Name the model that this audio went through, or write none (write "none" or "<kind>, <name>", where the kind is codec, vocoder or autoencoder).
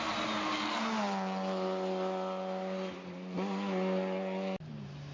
none